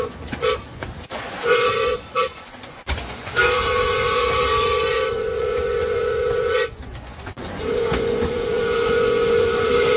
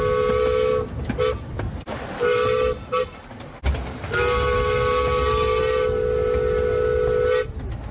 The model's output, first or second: first